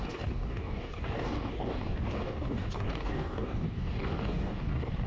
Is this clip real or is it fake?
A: fake